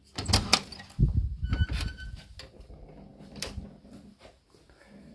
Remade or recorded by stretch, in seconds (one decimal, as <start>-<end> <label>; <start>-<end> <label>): 0.0-5.1 recorded